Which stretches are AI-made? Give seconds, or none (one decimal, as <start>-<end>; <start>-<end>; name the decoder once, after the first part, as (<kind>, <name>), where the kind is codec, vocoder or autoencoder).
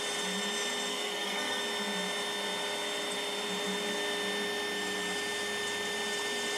0.9-1.6 (codec, SNAC)